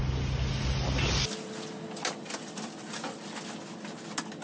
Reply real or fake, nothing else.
real